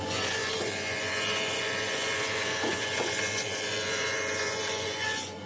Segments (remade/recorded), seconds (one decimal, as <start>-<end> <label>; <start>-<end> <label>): 0.0-5.5 remade

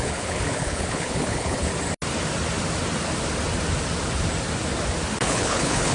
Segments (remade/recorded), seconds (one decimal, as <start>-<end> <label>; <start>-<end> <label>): 0.0-1.7 remade; 1.7-5.2 recorded; 5.2-5.9 remade

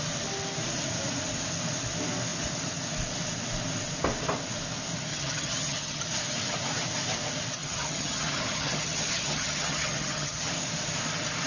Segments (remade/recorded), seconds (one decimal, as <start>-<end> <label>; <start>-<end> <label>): 0.0-5.1 recorded; 5.1-6.0 remade; 6.0-7.6 recorded; 7.6-10.5 remade; 10.5-11.5 recorded

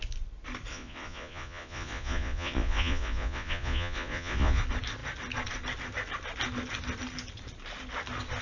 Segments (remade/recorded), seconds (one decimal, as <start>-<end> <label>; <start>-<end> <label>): 0.0-0.7 recorded; 0.7-4.6 remade; 4.6-8.4 recorded

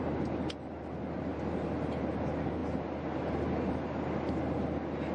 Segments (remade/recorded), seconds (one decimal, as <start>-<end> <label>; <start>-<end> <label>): 0.0-5.1 recorded